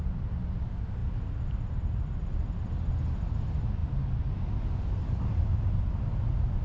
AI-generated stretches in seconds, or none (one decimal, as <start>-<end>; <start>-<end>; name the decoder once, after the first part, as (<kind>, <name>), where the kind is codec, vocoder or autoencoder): none